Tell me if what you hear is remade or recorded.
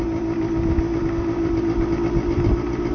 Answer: recorded